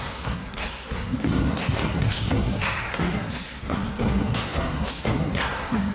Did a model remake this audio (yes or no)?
yes